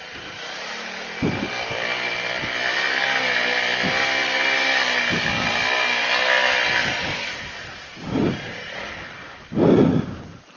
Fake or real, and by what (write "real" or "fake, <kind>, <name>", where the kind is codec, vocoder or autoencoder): real